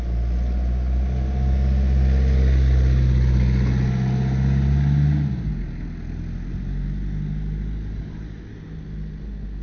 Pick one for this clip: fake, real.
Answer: real